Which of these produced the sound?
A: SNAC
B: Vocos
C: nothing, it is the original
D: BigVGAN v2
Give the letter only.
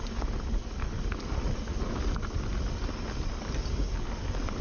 C